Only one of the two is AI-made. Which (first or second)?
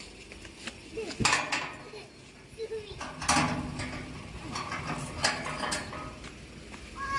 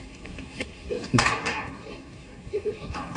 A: second